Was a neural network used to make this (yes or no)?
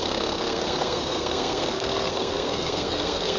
yes